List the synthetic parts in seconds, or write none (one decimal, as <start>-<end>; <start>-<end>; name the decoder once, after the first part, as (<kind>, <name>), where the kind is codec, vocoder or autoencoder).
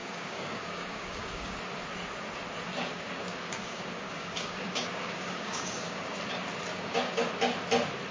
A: 0.0-1.6 (codec, DAC); 2.9-6.2; 6.7-7.3